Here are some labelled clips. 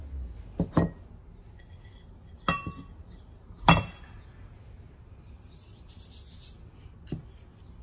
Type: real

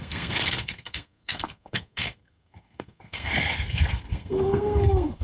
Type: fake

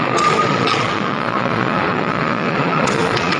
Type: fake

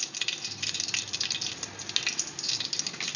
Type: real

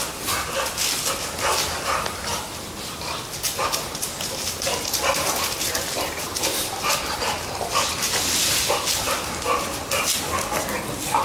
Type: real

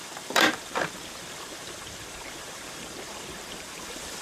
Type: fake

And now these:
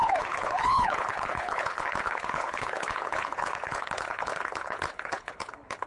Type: fake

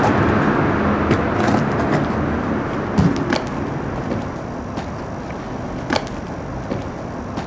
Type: real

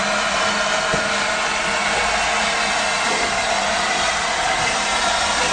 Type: real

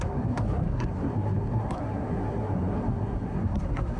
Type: fake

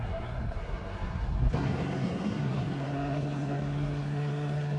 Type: fake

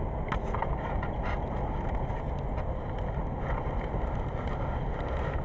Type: real